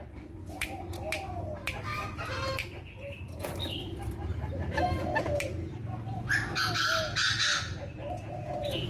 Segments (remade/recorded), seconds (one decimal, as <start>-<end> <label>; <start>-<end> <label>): 0.0-8.9 recorded